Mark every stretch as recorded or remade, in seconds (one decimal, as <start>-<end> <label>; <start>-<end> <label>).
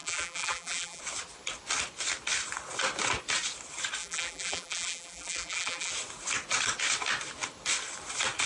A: 0.0-1.0 remade; 1.0-4.0 recorded; 4.0-5.9 remade; 5.9-8.5 recorded